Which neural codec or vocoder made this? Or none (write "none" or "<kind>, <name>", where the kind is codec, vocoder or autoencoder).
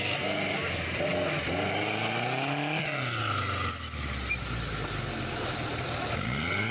none